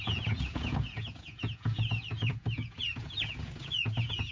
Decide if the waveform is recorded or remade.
remade